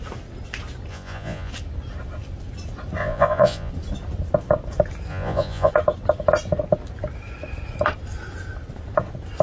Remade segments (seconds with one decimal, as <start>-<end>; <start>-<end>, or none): 0.9-1.5; 3.0-3.7; 5.1-5.7